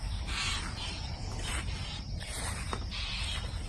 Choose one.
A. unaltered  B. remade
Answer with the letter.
A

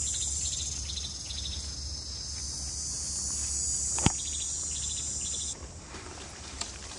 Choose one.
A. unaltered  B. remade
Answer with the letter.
A